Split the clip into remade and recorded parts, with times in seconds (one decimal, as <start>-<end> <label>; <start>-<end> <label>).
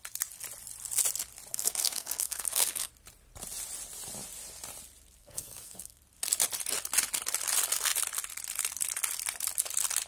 0.0-1.5 recorded; 1.5-2.9 remade; 2.9-5.2 recorded; 5.2-6.0 remade; 6.0-10.1 recorded